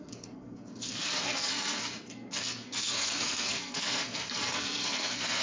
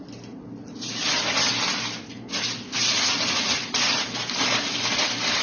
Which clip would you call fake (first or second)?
first